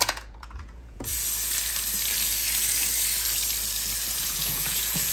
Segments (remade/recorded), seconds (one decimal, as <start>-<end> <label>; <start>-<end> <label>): 0.0-1.1 remade; 1.1-4.2 recorded; 4.2-5.1 remade